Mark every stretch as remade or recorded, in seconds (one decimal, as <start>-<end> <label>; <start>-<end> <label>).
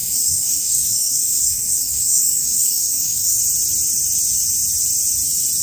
0.0-3.4 remade; 3.4-5.6 recorded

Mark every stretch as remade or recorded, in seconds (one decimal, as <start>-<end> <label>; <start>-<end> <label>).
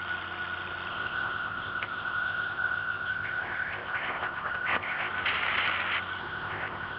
0.0-0.9 recorded; 0.9-5.1 remade; 5.1-6.2 recorded; 6.2-7.0 remade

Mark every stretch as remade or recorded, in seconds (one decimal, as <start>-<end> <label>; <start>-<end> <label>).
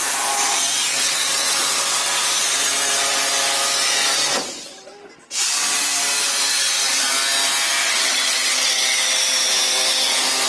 0.0-0.9 recorded; 0.9-1.7 remade; 1.7-7.8 recorded; 7.8-8.8 remade; 8.8-10.5 recorded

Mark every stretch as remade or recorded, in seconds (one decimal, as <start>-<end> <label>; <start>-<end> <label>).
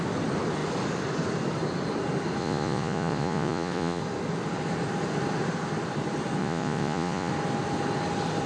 0.0-2.4 recorded; 2.4-4.0 remade; 4.0-6.4 recorded; 6.4-7.3 remade; 7.3-8.5 recorded